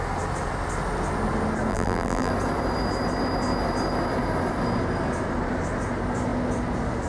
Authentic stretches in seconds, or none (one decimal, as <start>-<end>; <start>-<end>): 0.0-1.7; 2.3-7.1